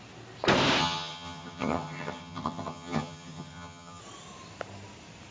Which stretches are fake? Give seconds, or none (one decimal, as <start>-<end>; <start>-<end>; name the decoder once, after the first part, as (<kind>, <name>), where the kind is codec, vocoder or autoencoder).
0.8-4.0 (vocoder, HiFi-GAN)

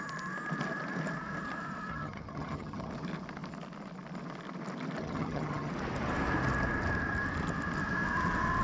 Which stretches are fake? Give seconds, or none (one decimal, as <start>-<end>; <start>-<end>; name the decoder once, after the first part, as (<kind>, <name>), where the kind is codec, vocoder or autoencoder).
1.9-2.9 (vocoder, HiFi-GAN); 5.0-5.7

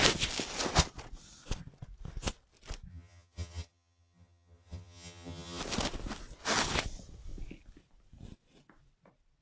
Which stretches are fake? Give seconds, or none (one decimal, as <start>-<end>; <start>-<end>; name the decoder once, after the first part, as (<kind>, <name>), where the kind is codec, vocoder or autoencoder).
2.9-5.6 (vocoder, HiFi-GAN)

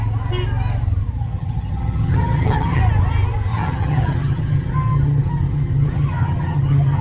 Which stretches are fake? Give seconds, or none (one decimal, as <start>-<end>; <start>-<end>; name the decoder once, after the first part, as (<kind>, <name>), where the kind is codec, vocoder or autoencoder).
1.2-2.8 (vocoder, HiFi-GAN); 3.5-7.0

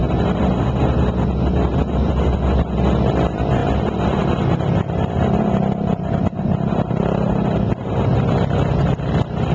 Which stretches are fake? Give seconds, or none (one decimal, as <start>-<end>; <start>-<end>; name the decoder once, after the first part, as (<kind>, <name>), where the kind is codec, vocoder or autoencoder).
none

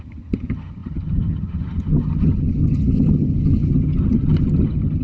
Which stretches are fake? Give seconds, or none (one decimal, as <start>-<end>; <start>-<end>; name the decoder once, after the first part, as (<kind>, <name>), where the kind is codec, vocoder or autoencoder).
0.0-5.0 (vocoder, HiFi-GAN)

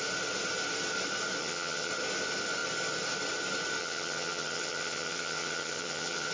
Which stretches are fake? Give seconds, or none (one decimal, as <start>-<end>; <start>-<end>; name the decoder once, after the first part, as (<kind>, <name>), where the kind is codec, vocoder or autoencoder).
1.4-1.9 (vocoder, HiFi-GAN); 3.8-6.3

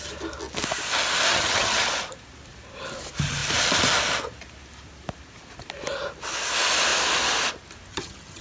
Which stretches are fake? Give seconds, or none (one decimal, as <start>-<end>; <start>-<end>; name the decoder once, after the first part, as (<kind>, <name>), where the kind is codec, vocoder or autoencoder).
1.3-1.9 (vocoder, HiFi-GAN); 7.9-8.4